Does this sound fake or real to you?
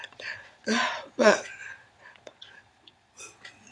fake